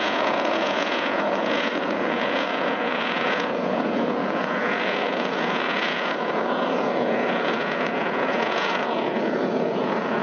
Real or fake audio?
fake